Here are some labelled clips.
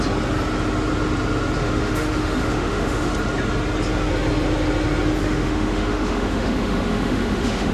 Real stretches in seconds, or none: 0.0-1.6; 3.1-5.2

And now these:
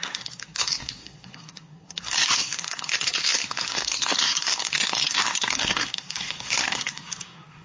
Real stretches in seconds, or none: none